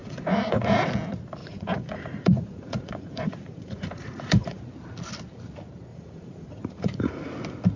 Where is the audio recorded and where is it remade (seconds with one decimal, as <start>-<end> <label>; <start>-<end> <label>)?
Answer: 0.0-0.9 remade; 0.9-1.4 recorded; 1.4-4.6 remade; 4.6-5.9 recorded; 5.9-7.2 remade; 7.2-7.8 recorded